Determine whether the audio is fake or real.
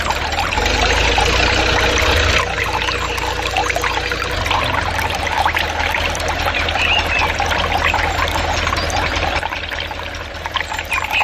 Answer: real